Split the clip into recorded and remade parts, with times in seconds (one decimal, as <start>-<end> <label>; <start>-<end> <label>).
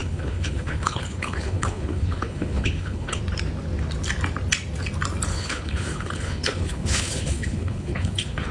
0.0-3.2 remade; 3.2-5.3 recorded; 5.3-8.5 remade